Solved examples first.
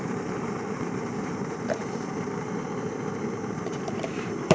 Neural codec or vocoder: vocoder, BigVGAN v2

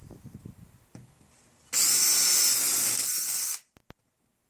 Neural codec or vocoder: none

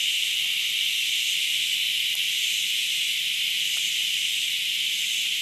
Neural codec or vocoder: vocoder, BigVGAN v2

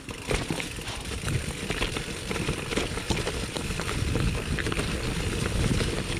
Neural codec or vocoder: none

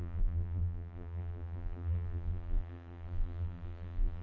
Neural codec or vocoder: vocoder, BigVGAN v2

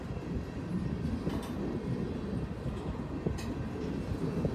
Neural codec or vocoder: none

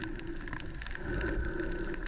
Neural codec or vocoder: none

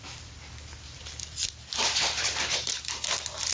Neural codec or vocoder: vocoder, BigVGAN v2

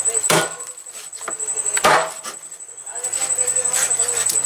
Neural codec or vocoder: vocoder, BigVGAN v2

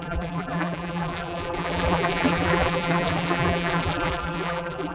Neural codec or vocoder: vocoder, BigVGAN v2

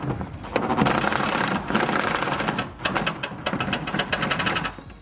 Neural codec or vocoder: none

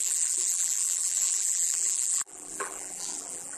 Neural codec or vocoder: vocoder, BigVGAN v2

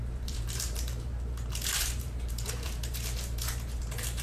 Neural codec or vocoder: vocoder, BigVGAN v2